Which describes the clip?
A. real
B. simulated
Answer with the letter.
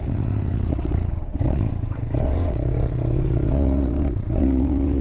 B